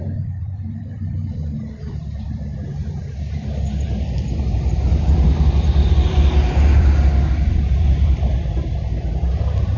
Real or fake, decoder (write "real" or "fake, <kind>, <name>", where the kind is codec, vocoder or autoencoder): fake, vocoder, BigVGAN v2